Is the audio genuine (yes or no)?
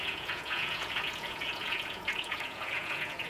no